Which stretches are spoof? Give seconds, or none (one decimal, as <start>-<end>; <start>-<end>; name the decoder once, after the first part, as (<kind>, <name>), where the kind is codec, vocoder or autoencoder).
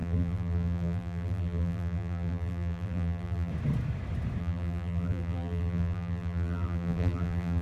0.0-3.5 (vocoder, BigVGAN v2); 4.4-7.6